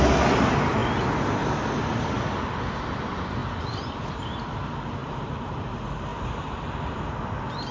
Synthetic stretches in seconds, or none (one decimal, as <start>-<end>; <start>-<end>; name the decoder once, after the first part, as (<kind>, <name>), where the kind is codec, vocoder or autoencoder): 3.4-4.5 (vocoder, BigVGAN v2); 5.0-5.6